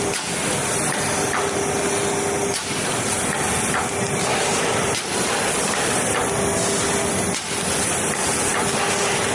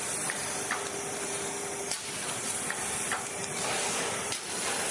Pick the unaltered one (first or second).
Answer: first